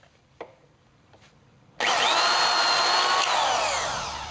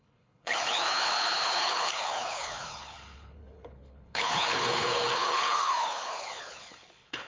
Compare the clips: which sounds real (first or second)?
first